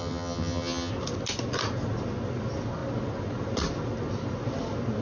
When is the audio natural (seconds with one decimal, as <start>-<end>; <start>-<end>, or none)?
0.9-5.0